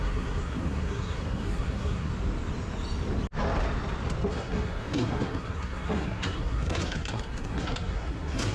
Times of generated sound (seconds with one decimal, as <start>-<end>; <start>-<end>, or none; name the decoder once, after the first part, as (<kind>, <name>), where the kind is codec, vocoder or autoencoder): 0.0-2.1 (codec, SNAC); 4.3-8.5